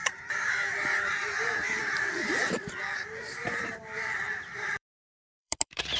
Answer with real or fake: fake